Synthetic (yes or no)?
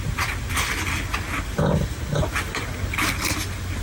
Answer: no